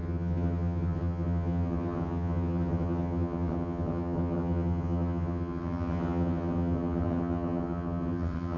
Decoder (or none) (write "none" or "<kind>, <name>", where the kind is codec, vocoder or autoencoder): vocoder, HiFi-GAN